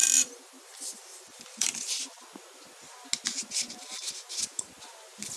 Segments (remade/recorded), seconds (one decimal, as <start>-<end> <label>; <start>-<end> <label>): 0.0-2.0 remade; 2.0-5.4 recorded